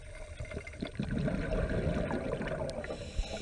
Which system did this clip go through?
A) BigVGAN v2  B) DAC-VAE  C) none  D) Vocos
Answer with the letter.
C